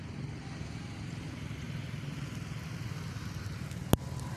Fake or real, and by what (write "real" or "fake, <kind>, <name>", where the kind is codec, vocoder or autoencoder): real